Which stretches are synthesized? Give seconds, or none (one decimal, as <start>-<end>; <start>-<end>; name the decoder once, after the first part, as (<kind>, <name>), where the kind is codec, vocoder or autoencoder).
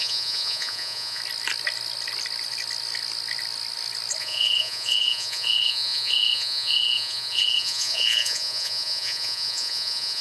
0.0-1.2 (vocoder, Vocos); 4.2-10.2